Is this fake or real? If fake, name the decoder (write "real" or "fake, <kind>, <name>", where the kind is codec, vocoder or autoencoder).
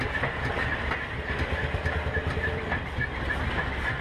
fake, vocoder, BigVGAN v2